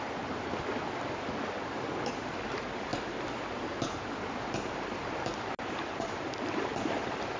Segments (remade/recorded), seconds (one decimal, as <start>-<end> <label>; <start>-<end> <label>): 0.0-7.4 recorded